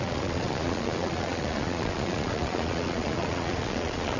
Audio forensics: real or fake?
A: fake